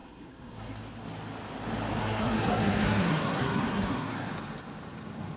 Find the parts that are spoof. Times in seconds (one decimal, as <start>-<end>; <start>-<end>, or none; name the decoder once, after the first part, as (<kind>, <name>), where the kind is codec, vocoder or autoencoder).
0.0-0.8 (codec, SNAC); 2.0-4.3